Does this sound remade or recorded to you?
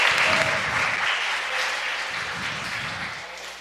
recorded